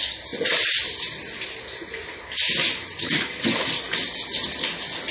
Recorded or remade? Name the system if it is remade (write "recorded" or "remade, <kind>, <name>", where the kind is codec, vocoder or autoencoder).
recorded